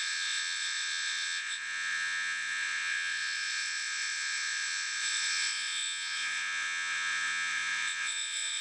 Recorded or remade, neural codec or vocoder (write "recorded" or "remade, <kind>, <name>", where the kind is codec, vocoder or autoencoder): remade, vocoder, Vocos